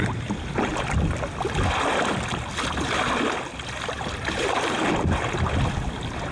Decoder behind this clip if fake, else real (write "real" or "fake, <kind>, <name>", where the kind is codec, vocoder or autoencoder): real